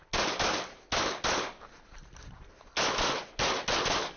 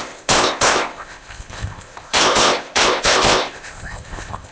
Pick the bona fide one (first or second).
first